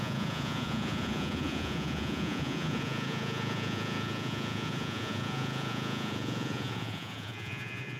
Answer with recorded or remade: remade